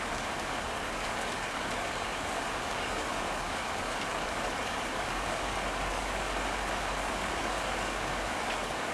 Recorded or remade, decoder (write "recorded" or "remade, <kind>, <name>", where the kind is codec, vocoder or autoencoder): remade, codec, DAC